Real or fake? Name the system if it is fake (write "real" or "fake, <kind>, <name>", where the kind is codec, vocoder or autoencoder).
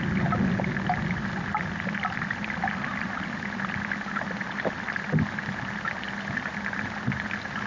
real